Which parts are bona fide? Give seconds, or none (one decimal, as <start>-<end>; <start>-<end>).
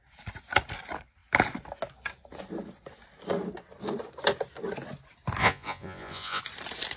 0.0-5.4; 6.4-7.0